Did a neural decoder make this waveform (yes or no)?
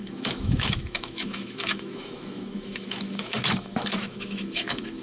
yes